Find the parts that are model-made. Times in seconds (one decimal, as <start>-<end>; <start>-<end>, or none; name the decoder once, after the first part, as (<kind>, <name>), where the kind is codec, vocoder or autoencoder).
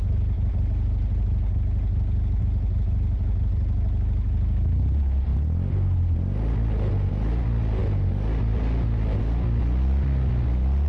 none